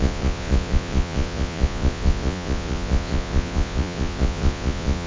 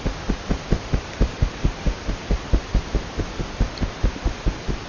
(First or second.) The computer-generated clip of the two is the first